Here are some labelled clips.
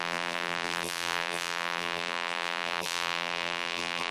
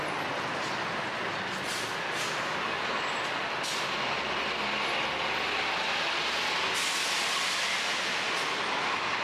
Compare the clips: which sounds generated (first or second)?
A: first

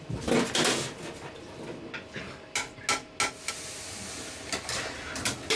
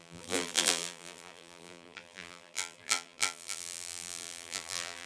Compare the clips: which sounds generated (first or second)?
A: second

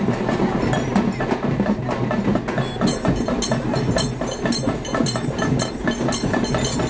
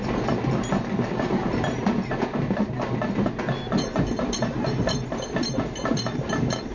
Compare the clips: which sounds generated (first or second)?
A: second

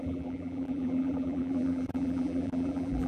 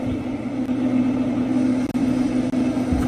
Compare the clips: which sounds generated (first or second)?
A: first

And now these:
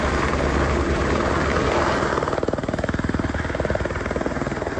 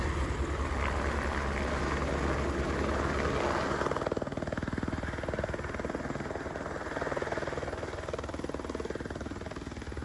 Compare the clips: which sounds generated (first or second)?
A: first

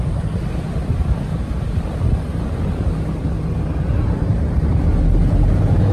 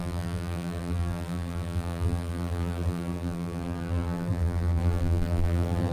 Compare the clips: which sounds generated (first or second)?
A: second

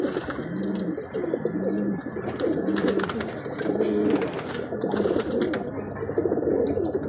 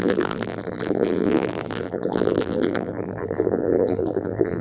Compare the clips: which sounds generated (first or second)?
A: second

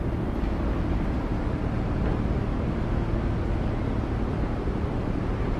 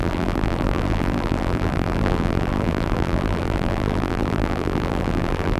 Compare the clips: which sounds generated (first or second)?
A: second